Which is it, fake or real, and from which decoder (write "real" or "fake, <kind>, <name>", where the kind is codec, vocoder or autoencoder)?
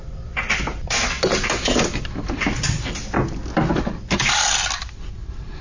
real